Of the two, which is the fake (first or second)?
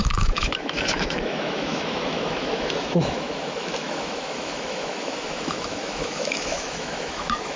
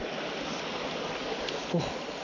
first